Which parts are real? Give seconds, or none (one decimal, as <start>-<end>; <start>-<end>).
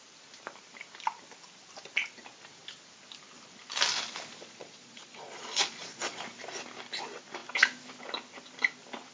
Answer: 0.0-4.4; 6.2-9.1